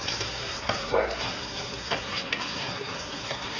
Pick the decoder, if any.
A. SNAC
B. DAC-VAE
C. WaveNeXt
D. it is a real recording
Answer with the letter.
A